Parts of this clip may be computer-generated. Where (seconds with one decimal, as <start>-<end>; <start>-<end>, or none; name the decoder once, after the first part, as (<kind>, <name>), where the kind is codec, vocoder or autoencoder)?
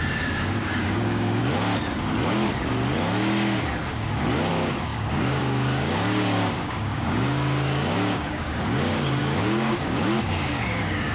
0.0-1.4 (codec, DAC); 4.5-11.1